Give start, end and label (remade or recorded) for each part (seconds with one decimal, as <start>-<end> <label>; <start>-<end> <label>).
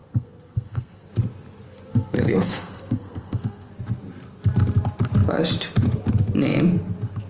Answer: 0.0-1.1 remade; 1.1-1.9 recorded; 1.9-3.7 remade; 3.7-7.3 recorded